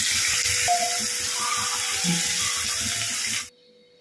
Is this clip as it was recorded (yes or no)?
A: yes